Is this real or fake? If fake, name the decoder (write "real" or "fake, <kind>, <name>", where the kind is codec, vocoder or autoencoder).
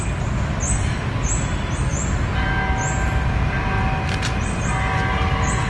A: real